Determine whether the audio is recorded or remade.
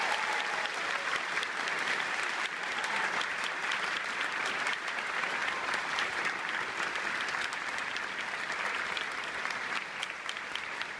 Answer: remade